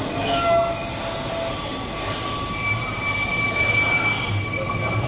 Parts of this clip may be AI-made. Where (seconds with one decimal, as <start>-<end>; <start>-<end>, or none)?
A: none